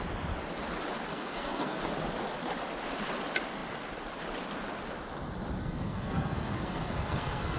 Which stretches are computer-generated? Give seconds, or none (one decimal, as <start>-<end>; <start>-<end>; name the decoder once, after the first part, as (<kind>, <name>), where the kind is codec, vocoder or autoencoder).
1.1-1.8 (codec, SNAC); 5.6-7.6